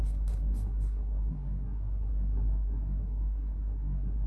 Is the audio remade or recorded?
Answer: remade